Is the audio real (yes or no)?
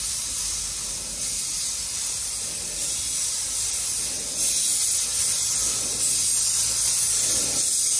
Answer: yes